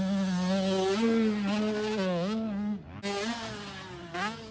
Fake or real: real